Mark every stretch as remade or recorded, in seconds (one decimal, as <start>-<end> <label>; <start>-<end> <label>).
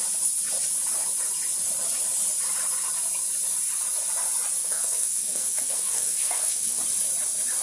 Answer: 0.0-4.6 recorded; 4.6-6.8 remade; 6.8-7.6 recorded